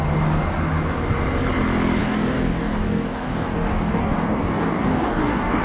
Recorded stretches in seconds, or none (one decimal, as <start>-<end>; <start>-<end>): 0.0-2.0